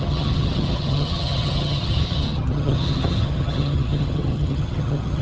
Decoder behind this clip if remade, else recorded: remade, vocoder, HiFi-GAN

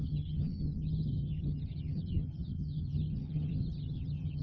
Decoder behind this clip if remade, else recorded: remade, vocoder, HiFi-GAN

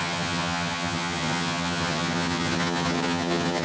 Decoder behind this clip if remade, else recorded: remade, vocoder, HiFi-GAN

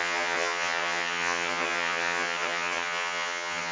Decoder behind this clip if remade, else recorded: remade, vocoder, HiFi-GAN